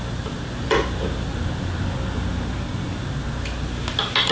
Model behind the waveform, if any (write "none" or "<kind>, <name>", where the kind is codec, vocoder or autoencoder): none